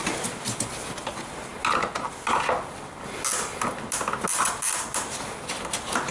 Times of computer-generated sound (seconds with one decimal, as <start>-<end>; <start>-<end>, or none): none